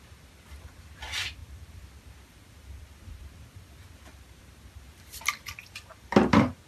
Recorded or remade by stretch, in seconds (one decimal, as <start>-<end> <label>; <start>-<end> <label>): 0.0-1.4 recorded; 1.4-5.2 remade; 5.2-6.7 recorded